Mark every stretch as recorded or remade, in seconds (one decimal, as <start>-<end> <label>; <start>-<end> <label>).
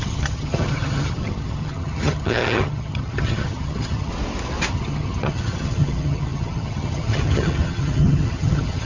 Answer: 0.0-4.1 remade; 4.1-4.7 recorded; 4.7-8.8 remade